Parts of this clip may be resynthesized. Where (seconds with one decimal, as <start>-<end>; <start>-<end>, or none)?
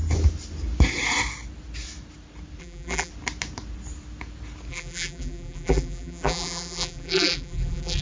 2.6-3.1; 4.7-8.0